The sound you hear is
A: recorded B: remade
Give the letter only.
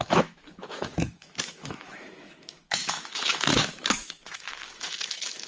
B